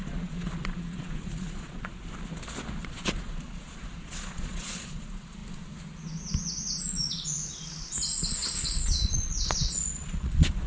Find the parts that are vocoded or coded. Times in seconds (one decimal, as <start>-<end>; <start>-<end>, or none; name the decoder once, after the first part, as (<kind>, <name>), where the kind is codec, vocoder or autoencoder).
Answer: 0.0-2.0 (vocoder, Vocos); 2.8-5.4; 6.8-7.4; 8.3-10.7